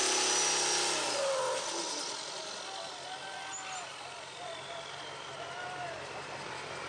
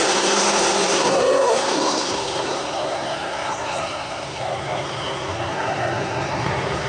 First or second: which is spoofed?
second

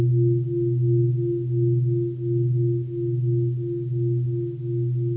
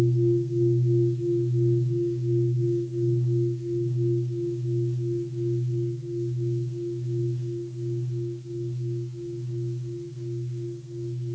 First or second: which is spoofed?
second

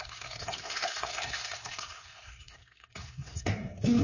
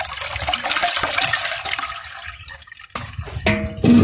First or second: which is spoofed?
first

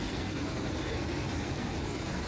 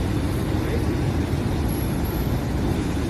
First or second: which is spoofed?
first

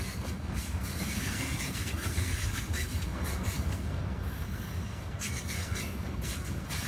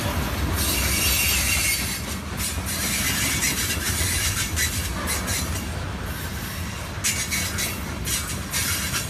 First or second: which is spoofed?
first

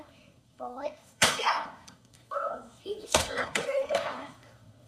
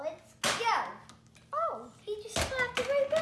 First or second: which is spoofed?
first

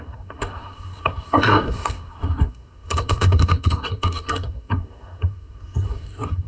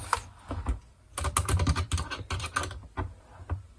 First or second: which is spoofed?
first